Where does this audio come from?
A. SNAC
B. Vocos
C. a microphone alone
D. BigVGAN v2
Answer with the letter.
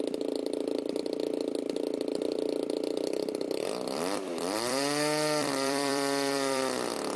D